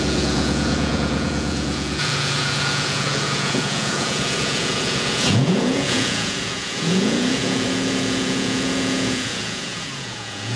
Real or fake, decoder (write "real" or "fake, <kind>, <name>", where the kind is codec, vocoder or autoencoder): fake, vocoder, Vocos